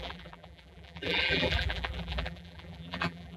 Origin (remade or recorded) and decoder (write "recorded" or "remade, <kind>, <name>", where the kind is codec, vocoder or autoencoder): remade, vocoder, BigVGAN v2